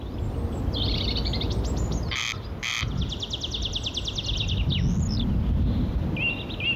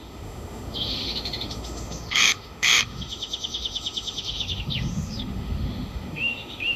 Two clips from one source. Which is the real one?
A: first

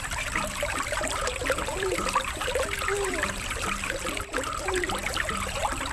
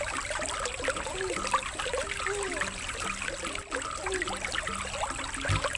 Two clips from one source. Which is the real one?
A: second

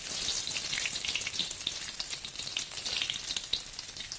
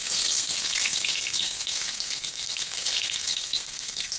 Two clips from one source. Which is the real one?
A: first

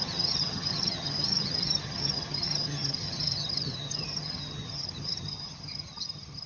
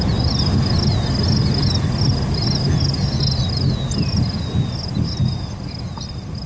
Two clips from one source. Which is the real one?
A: second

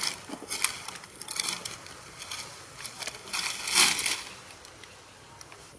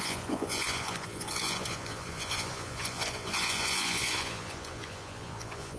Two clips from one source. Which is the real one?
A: first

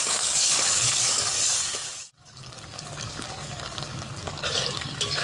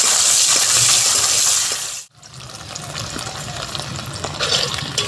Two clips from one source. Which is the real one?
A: second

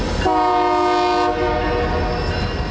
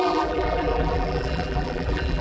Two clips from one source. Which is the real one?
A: first